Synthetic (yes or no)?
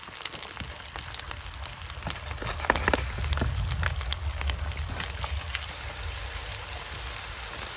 no